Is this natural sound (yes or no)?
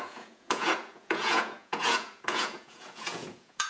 no